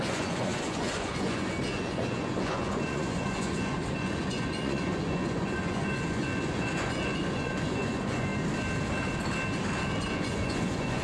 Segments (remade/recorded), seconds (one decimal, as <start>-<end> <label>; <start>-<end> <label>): 0.0-8.3 remade; 8.3-10.0 recorded; 10.0-11.0 remade